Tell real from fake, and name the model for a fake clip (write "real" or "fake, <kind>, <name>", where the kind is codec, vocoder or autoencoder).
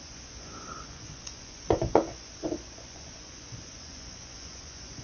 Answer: fake, vocoder, Vocos